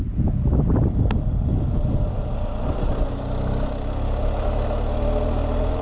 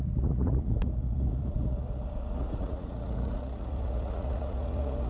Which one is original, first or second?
first